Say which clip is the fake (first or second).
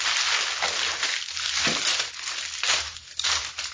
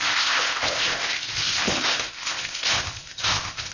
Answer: second